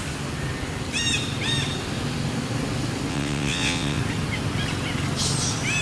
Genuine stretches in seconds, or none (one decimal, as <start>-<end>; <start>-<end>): 0.0-3.1; 4.0-5.8